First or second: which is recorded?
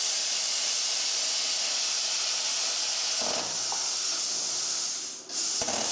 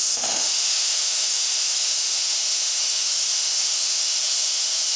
first